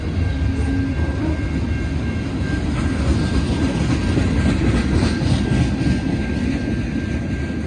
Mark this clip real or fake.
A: real